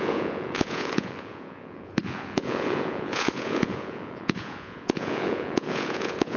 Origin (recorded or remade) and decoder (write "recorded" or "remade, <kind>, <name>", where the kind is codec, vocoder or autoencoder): remade, vocoder, Vocos